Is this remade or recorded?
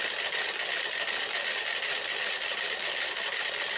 recorded